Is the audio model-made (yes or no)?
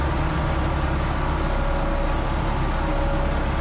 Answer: no